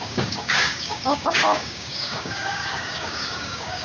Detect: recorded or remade remade